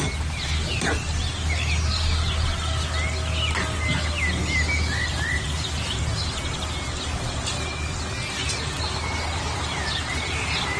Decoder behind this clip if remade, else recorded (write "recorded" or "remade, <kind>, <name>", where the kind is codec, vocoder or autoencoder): recorded